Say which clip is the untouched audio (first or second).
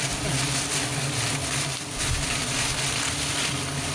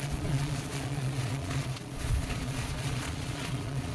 first